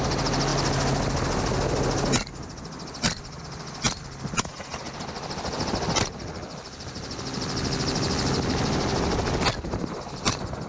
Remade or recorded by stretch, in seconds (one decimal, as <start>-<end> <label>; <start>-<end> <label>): 0.0-10.7 recorded